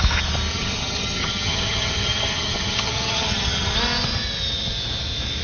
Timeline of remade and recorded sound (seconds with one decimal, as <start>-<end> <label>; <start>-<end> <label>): 0.0-0.5 recorded; 0.5-3.7 remade; 3.7-5.4 recorded